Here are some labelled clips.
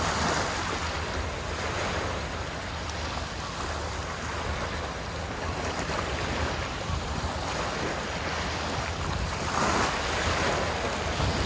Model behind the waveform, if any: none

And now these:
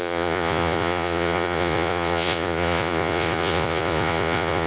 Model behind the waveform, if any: vocoder, Vocos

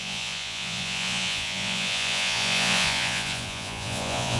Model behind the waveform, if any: vocoder, Vocos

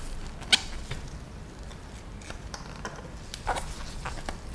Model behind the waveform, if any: none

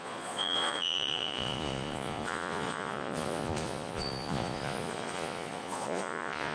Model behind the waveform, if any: vocoder, Vocos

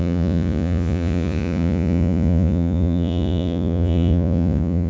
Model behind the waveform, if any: vocoder, Vocos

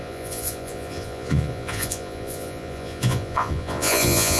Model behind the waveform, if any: vocoder, Vocos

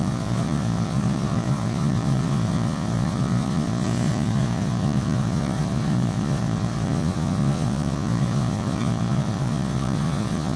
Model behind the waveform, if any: vocoder, Vocos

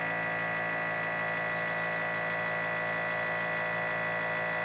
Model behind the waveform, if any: none